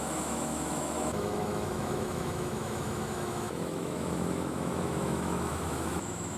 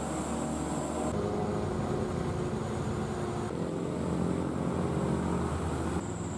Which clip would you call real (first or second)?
second